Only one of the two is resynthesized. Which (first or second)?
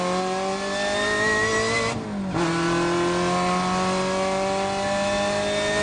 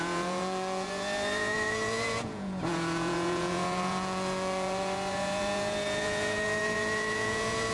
second